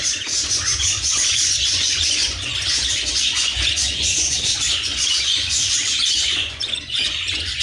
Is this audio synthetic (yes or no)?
yes